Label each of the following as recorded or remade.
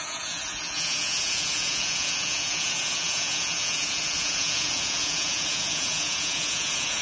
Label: remade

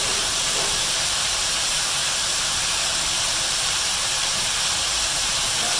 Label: remade